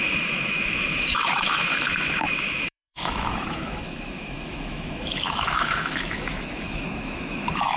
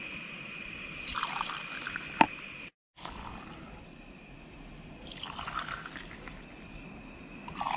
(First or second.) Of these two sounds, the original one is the second